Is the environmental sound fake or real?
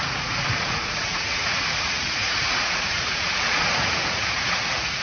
fake